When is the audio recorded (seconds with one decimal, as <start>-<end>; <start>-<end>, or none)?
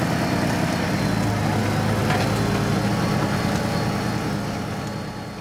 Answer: 0.0-5.4